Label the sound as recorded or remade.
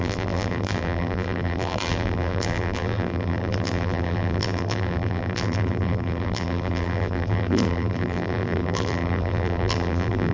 remade